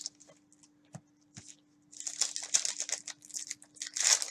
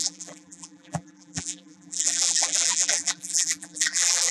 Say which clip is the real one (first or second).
first